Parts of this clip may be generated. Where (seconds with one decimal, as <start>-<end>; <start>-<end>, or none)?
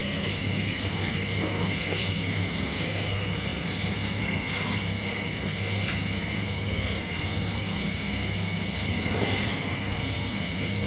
0.0-10.9